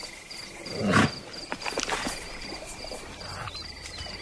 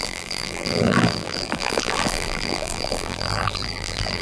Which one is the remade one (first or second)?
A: second